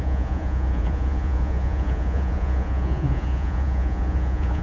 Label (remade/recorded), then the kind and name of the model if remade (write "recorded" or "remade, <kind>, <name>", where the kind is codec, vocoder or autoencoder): remade, vocoder, Vocos